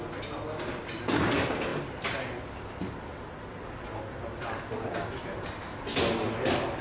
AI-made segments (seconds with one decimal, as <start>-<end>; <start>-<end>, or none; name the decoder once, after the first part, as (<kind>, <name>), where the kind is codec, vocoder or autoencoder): none